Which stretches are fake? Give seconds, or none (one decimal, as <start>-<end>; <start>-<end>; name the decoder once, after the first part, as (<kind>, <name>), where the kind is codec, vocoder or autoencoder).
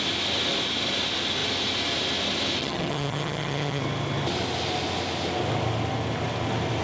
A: 2.6-3.8 (vocoder, HiFi-GAN)